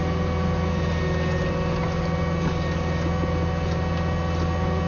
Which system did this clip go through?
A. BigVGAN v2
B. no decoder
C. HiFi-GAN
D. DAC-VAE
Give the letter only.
B